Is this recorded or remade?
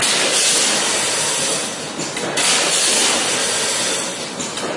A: recorded